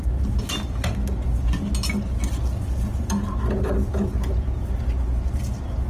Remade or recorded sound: recorded